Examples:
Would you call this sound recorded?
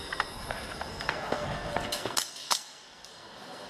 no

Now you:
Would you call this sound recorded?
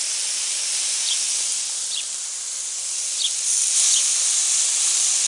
yes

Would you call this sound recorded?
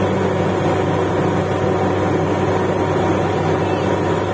yes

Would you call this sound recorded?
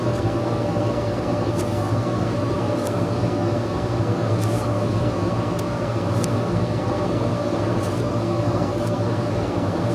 no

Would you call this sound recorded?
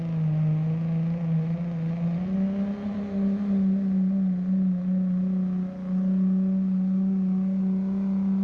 yes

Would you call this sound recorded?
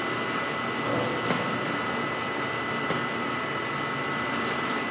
yes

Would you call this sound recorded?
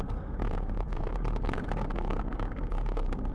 no